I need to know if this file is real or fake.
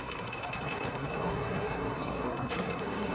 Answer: fake